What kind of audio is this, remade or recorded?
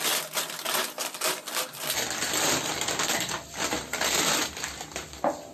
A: recorded